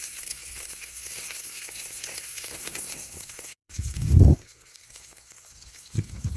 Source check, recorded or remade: remade